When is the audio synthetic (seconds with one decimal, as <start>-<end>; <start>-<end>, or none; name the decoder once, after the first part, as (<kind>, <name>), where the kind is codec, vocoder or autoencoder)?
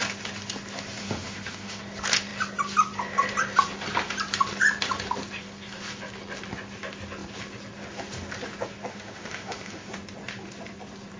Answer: 1.0-1.8 (autoencoder, DAC-VAE); 8.9-9.9